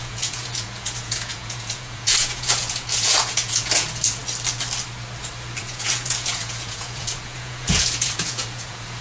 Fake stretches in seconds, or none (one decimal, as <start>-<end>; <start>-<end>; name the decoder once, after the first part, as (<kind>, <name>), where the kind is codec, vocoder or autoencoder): 0.0-4.2 (vocoder, Vocos); 5.6-9.0

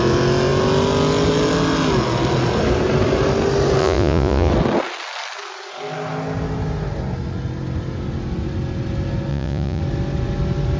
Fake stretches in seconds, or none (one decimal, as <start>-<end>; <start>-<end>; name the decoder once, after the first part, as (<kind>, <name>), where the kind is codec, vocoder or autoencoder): 3.8-4.5 (vocoder, Vocos); 9.3-9.8

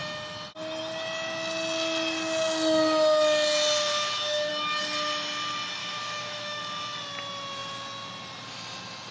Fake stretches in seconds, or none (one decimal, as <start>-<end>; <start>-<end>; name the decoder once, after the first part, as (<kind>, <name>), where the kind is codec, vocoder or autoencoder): 3.9-4.5 (autoencoder, DAC-VAE); 5.8-6.6

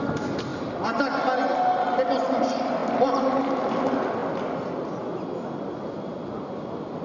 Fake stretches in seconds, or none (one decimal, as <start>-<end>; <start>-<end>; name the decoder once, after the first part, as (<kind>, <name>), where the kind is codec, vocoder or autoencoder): none

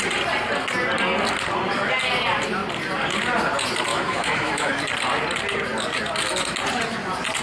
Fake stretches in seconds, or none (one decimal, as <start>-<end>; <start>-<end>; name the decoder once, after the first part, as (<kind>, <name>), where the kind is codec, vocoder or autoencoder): 3.9-4.8 (autoencoder, DAC-VAE)

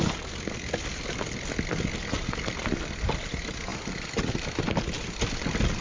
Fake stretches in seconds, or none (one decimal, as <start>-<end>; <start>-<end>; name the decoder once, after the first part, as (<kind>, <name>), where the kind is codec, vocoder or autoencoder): none